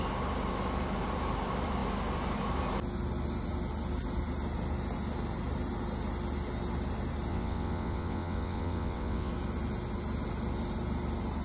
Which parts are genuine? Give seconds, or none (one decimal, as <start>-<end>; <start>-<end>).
0.0-7.3; 9.3-11.4